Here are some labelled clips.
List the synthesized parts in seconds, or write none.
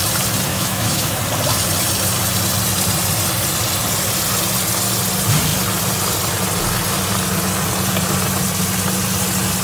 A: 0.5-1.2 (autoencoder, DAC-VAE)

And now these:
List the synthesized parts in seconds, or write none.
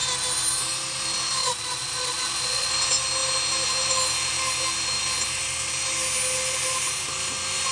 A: 1.4-2.7 (vocoder, Vocos)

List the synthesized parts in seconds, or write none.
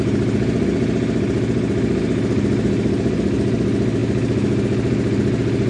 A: none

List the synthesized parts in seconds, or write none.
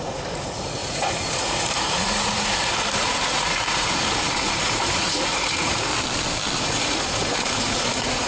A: 0.0-5.9 (vocoder, Vocos); 6.6-8.3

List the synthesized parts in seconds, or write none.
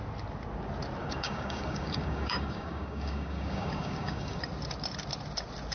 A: 1.0-4.4 (codec, DAC)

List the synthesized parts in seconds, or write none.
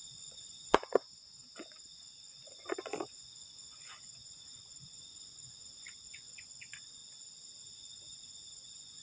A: 0.0-7.0 (vocoder, Vocos); 7.7-9.0